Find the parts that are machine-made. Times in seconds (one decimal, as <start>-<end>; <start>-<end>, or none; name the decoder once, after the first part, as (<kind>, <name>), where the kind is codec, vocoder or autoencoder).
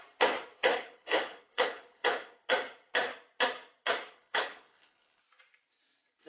0.7-2.4 (codec, HILCodec); 4.1-5.2